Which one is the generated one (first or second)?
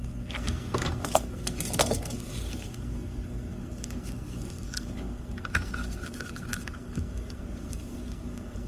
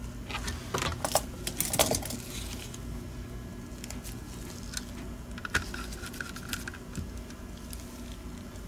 first